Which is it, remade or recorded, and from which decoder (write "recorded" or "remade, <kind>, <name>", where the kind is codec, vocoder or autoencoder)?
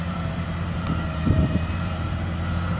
remade, vocoder, BigVGAN v2